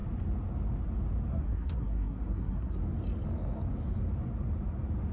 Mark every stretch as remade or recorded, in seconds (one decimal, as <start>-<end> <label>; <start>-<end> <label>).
0.0-1.3 recorded; 1.3-2.8 remade; 2.8-5.1 recorded